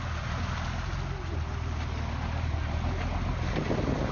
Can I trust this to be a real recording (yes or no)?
yes